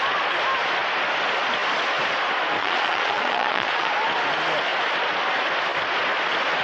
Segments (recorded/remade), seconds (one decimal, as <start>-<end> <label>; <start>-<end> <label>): 0.0-2.6 recorded; 2.6-3.9 remade; 3.9-6.6 recorded

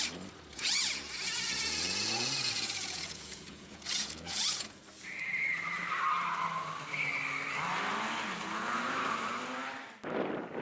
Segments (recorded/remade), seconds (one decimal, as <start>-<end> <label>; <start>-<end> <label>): 0.0-0.5 recorded; 0.5-4.8 remade; 4.8-10.6 recorded

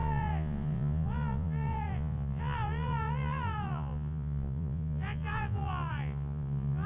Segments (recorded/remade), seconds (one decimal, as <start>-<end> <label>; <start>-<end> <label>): 0.0-6.9 remade

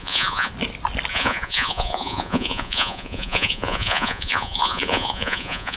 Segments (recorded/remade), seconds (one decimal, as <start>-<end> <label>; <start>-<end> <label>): 0.0-0.5 remade; 0.5-1.1 recorded; 1.1-5.8 remade

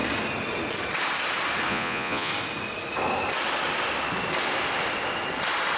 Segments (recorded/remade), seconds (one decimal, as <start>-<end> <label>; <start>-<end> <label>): 0.0-1.7 recorded; 1.7-2.3 remade; 2.3-5.8 recorded

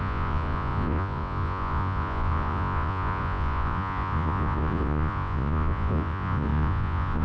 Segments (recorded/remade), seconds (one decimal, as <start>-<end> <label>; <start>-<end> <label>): 0.0-7.2 remade